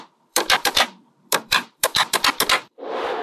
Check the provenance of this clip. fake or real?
fake